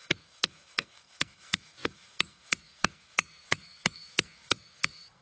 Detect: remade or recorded remade